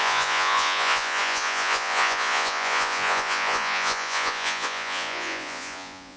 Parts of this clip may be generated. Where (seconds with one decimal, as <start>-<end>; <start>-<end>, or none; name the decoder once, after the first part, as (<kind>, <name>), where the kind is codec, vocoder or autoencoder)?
0.0-6.2 (vocoder, Vocos)